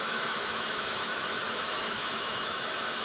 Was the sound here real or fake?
fake